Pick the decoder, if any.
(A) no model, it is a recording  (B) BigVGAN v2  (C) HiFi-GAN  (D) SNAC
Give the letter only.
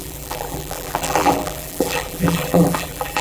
B